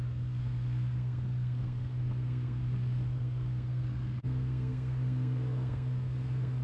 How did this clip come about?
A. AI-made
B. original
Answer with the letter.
A